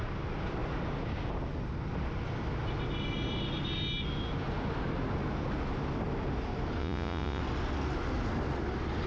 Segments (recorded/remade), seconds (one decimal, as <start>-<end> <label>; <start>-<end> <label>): 0.0-6.8 recorded; 6.8-7.4 remade; 7.4-9.1 recorded